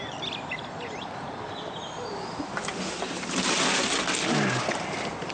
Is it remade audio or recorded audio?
recorded